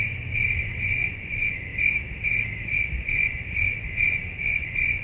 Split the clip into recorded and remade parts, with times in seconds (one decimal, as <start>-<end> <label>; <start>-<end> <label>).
0.0-1.7 remade; 1.7-3.0 recorded; 3.0-5.0 remade